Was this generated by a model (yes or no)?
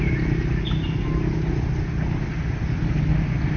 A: no